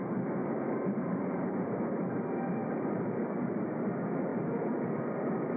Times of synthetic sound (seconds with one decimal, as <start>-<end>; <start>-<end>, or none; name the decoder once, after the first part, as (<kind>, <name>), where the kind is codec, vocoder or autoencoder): 0.4-1.8 (vocoder, BigVGAN v2); 2.6-3.7; 4.3-5.0